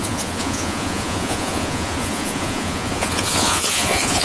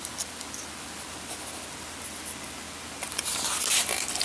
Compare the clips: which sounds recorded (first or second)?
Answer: second